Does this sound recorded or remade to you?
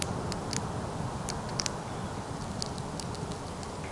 recorded